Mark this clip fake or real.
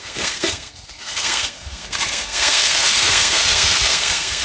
fake